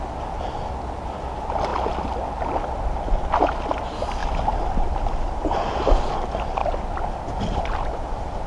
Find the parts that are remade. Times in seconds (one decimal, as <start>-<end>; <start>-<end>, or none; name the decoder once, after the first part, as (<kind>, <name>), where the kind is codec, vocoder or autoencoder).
none